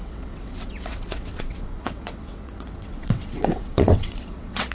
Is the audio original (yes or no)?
no